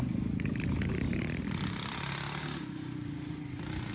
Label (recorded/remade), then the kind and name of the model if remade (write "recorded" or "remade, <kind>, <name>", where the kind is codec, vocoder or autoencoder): recorded